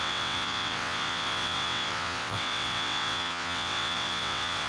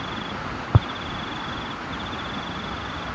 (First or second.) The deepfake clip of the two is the first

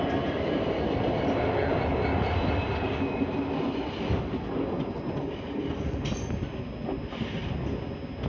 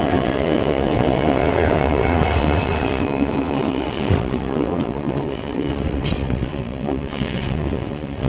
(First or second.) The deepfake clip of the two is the second